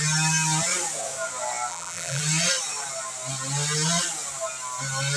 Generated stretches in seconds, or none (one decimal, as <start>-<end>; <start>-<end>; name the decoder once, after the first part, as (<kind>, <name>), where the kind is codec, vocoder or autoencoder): 1.7-2.2 (vocoder, BigVGAN v2)